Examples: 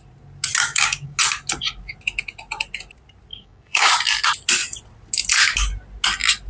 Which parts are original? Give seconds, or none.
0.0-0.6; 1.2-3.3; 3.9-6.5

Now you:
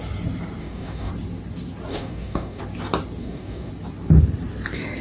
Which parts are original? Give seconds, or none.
0.0-0.6; 1.1-1.9; 2.6-3.2; 3.7-5.0

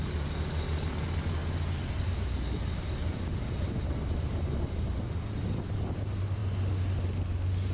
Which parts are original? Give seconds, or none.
0.0-7.7

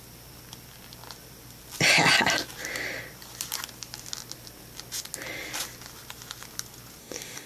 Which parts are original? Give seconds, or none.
0.0-7.0

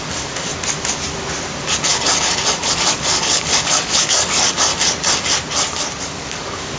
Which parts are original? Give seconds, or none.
0.5-2.6; 4.7-6.0

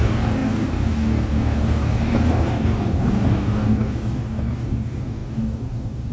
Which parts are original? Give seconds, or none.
none

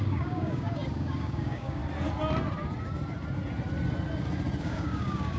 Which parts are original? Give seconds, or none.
1.8-4.6

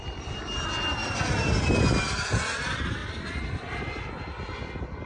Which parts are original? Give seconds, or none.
0.0-5.1